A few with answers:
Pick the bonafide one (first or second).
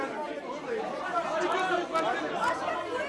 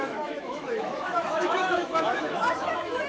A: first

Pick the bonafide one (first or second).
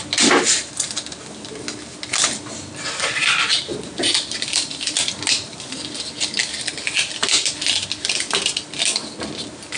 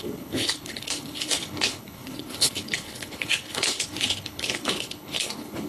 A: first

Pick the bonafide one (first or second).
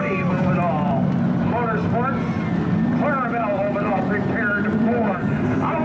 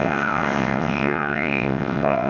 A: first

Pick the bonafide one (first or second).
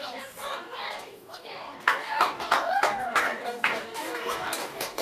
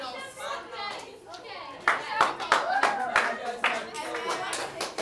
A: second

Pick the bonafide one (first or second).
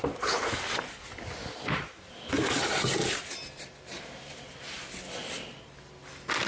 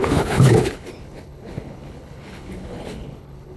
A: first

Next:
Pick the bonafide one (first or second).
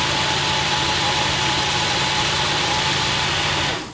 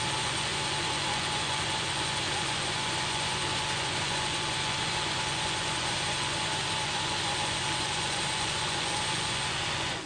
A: first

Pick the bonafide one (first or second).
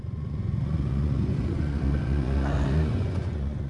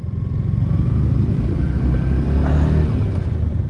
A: second